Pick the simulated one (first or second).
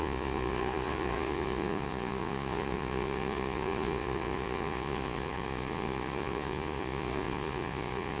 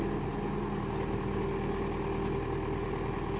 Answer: first